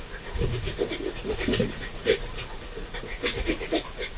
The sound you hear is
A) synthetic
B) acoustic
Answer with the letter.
A